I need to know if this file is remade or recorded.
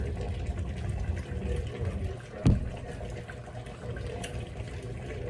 recorded